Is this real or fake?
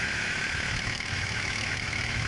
fake